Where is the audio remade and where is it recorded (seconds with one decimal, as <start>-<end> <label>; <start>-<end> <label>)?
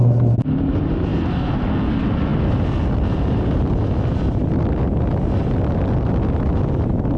0.0-7.2 recorded